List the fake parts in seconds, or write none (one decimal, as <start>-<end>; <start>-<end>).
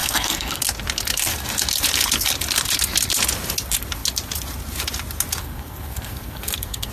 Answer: 0.0-0.6; 5.4-6.9